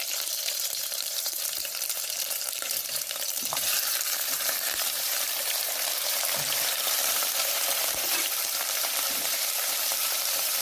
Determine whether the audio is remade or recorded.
remade